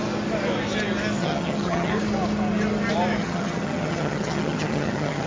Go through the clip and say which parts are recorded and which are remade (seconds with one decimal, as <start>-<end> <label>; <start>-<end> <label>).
0.0-1.2 recorded; 1.2-1.9 remade; 1.9-3.2 recorded; 3.2-5.3 remade